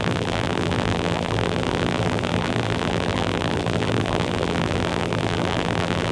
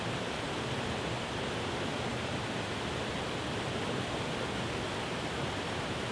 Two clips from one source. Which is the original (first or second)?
second